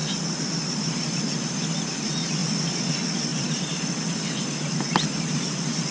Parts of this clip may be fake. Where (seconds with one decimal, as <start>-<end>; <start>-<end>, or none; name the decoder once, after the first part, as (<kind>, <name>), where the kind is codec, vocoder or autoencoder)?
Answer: 3.3-4.7 (vocoder, BigVGAN v2)